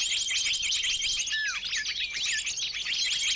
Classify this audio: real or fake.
real